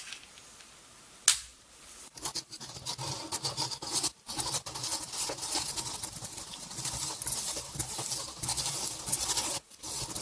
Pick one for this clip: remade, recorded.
recorded